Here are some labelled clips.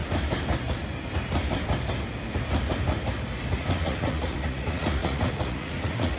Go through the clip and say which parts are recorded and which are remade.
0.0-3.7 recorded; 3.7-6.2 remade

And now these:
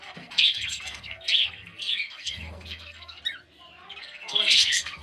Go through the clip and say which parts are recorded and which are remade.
0.0-3.2 remade; 3.2-4.0 recorded; 4.0-5.0 remade

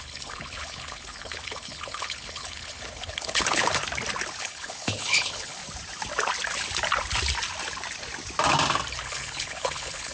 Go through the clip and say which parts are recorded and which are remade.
0.0-3.8 remade; 3.8-4.4 recorded; 4.4-5.6 remade; 5.6-9.0 recorded; 9.0-10.1 remade

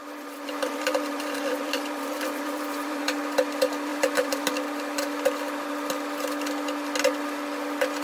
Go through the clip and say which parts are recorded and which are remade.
0.0-3.0 remade; 3.0-3.9 recorded; 3.9-4.5 remade; 4.5-8.0 recorded

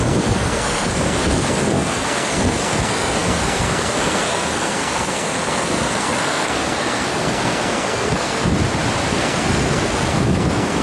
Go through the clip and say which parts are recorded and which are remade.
0.0-8.5 remade; 8.5-9.1 recorded; 9.1-10.8 remade